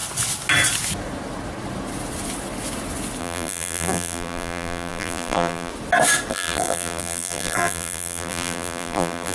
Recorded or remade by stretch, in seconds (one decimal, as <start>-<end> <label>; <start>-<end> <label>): 0.0-3.2 recorded; 3.2-5.7 remade; 5.7-6.3 recorded; 6.3-9.3 remade